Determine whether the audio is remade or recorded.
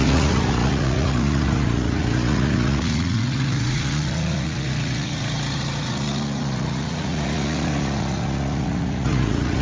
remade